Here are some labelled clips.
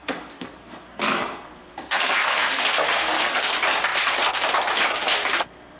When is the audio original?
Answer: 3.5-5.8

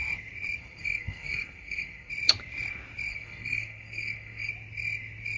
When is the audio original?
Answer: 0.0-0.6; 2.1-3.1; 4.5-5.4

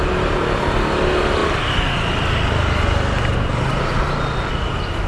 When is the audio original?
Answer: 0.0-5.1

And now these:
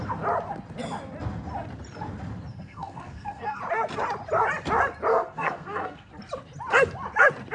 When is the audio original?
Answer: 0.0-2.5; 3.6-5.1; 6.1-7.5

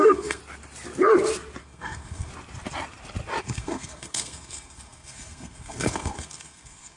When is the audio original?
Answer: 0.4-1.6; 2.3-3.4

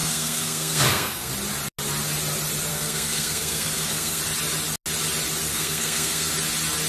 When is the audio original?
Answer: 1.3-2.7; 4.2-5.5; 6.3-6.9